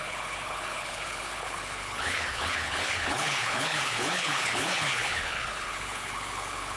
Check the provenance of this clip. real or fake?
fake